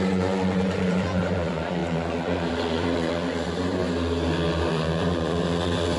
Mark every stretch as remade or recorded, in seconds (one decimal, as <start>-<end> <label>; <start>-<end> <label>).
0.0-3.8 remade; 3.8-4.7 recorded; 4.7-6.0 remade